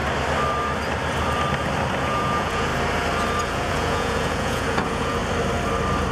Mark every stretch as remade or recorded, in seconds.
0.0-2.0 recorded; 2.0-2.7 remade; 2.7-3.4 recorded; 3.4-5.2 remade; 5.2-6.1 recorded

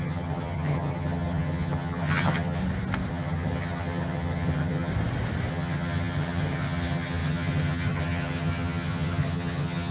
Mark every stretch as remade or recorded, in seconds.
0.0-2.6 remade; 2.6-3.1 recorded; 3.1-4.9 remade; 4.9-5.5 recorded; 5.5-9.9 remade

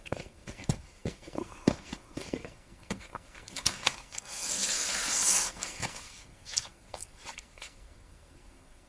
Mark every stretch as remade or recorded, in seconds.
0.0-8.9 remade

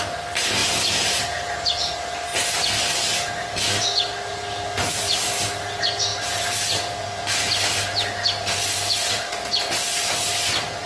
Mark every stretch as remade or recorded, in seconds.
0.0-10.9 recorded

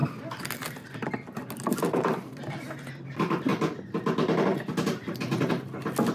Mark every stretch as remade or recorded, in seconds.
0.0-3.5 recorded; 3.5-5.5 remade; 5.5-6.1 recorded